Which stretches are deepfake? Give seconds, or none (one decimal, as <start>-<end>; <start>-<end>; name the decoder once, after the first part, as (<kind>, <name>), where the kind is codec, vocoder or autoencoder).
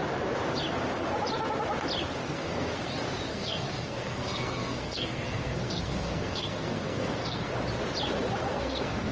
2.2-2.9 (codec, SNAC); 3.3-7.5; 8.4-9.1